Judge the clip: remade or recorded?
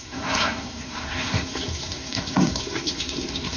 remade